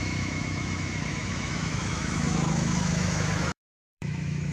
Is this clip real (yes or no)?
no